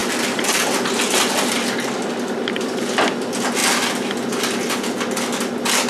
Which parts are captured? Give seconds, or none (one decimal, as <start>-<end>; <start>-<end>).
0.0-5.9